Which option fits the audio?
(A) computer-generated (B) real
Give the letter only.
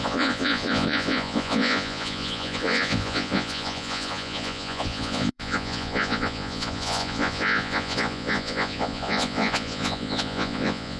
A